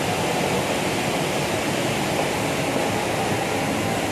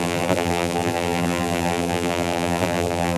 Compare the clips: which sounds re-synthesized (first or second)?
second